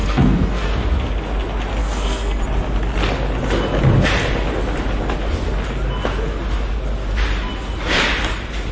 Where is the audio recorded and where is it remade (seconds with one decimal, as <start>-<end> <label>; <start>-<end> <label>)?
0.0-0.7 remade; 0.7-1.8 recorded; 1.8-2.4 remade; 2.4-8.7 recorded